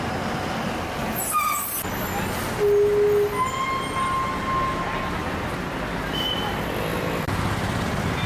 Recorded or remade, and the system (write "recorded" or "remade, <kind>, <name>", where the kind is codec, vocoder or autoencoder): recorded